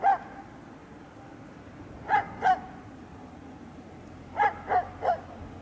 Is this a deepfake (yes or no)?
no